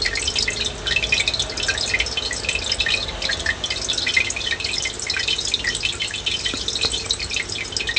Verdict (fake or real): real